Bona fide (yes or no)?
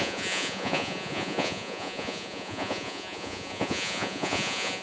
no